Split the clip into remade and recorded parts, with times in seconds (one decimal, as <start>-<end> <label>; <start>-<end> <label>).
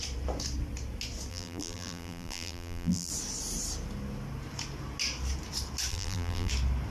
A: 0.0-1.3 recorded; 1.3-3.1 remade; 3.1-5.9 recorded; 5.9-6.5 remade; 6.5-6.9 recorded